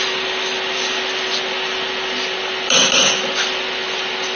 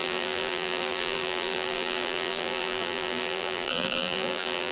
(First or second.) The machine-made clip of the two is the second